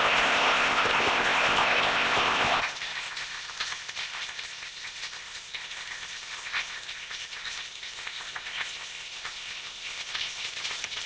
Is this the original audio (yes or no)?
no